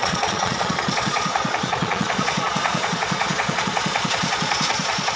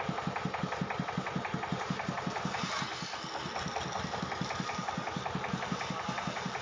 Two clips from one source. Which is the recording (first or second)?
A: second